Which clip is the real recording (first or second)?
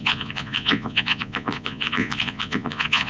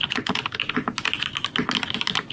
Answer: second